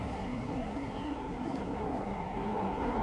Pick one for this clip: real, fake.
fake